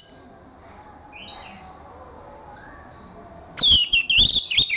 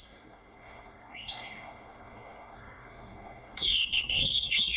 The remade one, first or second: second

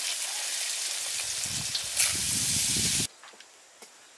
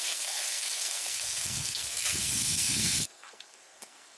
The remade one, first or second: second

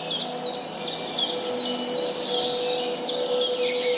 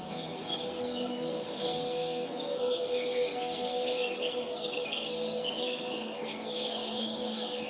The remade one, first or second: second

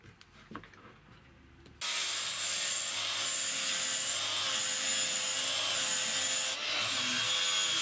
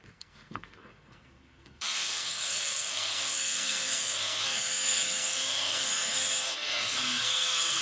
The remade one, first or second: second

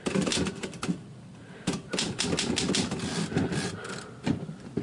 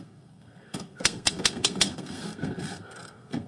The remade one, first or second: second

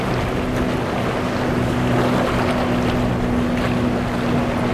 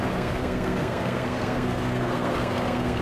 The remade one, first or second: second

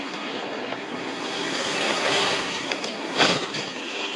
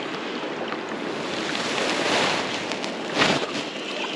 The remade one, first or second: first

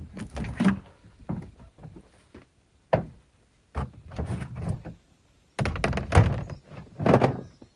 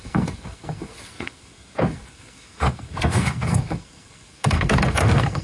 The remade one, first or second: second